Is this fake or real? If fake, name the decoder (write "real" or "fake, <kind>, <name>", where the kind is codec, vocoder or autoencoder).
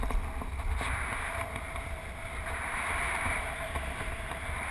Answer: real